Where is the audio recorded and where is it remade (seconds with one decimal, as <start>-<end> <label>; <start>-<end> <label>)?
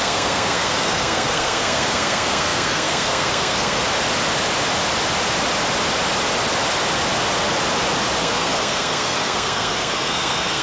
0.0-3.8 remade; 3.8-8.2 recorded; 8.2-10.6 remade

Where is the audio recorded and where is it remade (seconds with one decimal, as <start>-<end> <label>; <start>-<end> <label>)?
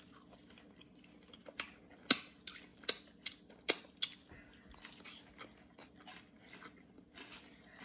0.0-7.8 recorded